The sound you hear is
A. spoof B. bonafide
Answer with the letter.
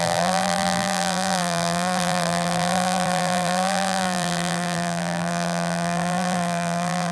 A